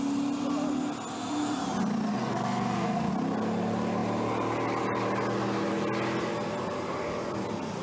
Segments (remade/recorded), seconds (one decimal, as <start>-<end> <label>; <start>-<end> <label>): 0.0-2.2 recorded; 2.2-3.1 remade; 3.1-7.8 recorded